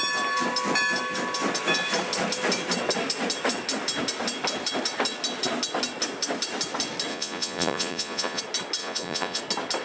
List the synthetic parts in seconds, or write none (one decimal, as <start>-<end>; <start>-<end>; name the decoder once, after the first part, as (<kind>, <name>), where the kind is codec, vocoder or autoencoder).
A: 7.1-8.4 (vocoder, Vocos); 8.8-9.4